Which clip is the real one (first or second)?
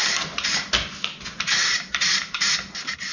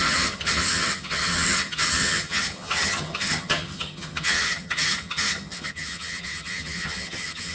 first